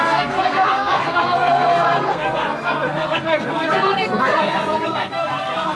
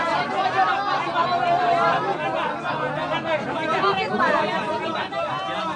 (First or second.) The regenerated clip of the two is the first